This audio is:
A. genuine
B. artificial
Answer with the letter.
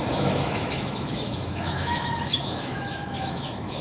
B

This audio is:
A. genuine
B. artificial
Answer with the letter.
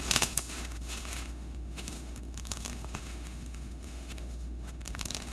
B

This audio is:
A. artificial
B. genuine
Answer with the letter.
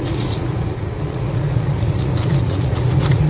A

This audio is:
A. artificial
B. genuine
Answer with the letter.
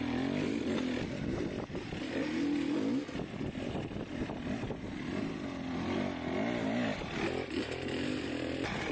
B